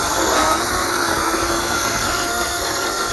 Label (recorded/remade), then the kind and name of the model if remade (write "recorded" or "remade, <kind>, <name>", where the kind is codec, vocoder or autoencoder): remade, codec, SNAC